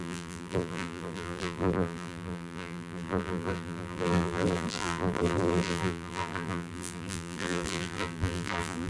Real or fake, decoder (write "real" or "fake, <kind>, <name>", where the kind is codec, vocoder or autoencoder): fake, vocoder, BigVGAN v2